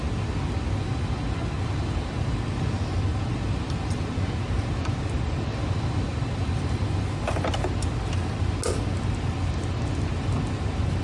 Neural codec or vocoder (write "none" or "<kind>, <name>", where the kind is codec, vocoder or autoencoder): none